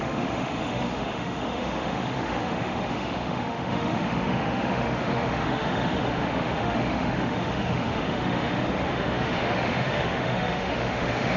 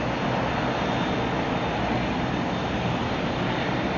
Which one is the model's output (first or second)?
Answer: first